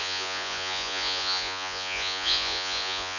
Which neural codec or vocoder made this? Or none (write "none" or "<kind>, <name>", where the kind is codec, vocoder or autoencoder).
vocoder, Vocos